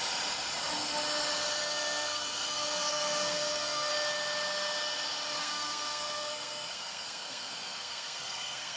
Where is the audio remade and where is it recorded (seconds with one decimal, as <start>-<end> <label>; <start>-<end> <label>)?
0.0-1.6 recorded; 1.6-3.9 remade; 3.9-5.4 recorded; 5.4-8.8 remade